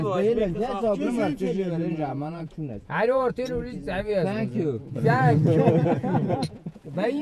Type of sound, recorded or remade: remade